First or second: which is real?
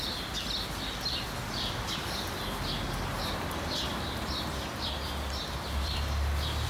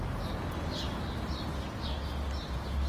second